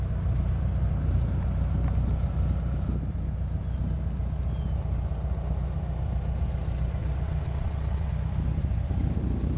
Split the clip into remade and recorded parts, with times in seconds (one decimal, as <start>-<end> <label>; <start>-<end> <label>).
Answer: 0.0-7.0 recorded; 7.0-8.1 remade; 8.1-9.6 recorded